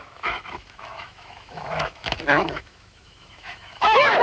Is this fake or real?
fake